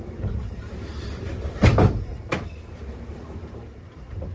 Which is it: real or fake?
fake